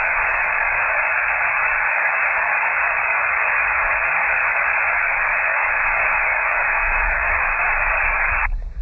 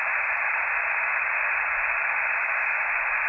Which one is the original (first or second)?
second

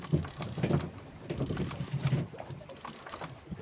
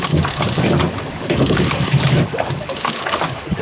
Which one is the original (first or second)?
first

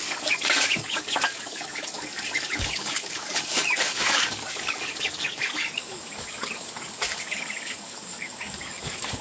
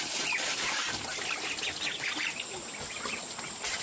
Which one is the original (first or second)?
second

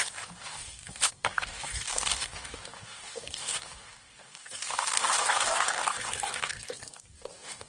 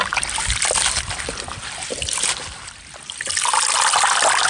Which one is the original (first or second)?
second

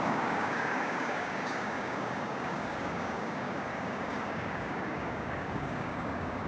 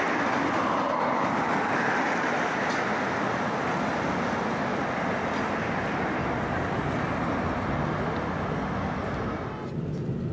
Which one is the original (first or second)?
second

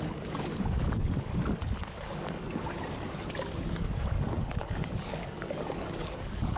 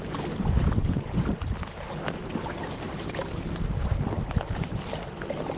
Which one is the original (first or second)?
second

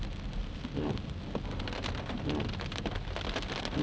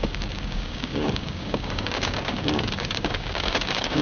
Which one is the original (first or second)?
first